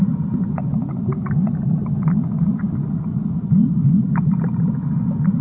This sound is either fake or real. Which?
real